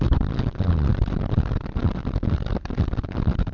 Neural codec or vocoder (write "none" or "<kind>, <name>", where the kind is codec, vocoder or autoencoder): none